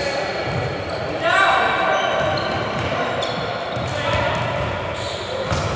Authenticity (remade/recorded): recorded